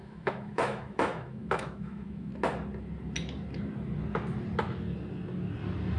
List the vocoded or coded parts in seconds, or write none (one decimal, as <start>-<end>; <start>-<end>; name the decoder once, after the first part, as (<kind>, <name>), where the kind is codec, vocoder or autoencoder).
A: 0.0-2.3 (autoencoder, DAC-VAE)